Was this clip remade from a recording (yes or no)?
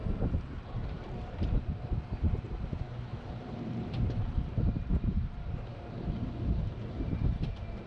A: yes